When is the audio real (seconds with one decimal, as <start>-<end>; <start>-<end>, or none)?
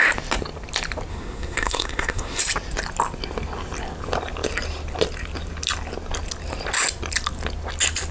0.0-1.1; 2.4-8.1